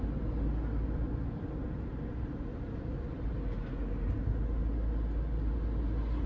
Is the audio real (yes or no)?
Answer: yes